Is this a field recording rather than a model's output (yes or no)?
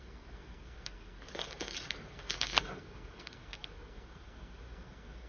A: no